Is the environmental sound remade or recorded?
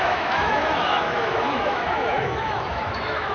remade